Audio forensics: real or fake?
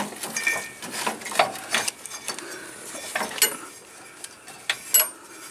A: real